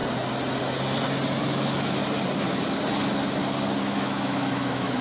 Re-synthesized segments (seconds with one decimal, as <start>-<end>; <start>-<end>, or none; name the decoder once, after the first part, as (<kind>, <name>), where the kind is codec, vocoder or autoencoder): 1.4-2.0 (autoencoder, DAC-VAE); 3.8-5.0